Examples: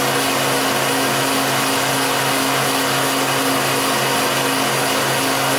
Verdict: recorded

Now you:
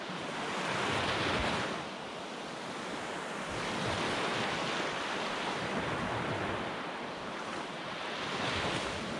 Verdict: recorded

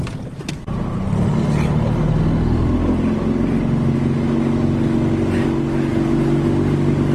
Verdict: recorded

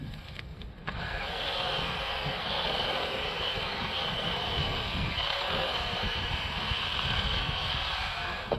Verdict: remade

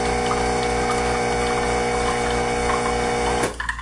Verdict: recorded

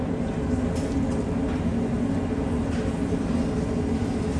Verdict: recorded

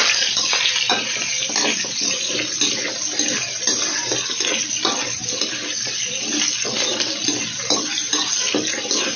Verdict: recorded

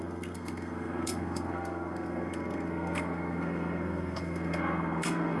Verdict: remade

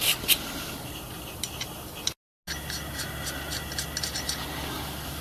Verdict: recorded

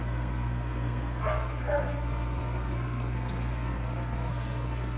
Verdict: remade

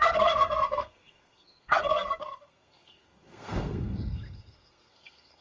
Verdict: remade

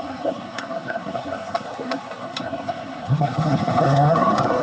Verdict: remade